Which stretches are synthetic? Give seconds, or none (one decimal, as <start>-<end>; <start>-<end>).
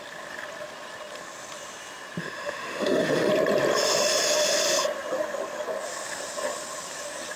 2.2-3.3